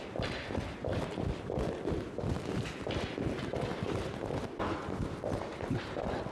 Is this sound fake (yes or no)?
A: no